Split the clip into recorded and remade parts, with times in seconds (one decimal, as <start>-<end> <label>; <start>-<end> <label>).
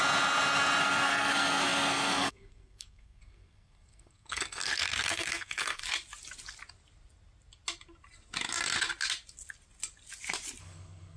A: 0.0-0.8 recorded; 0.8-5.8 remade; 5.8-10.6 recorded; 10.6-11.2 remade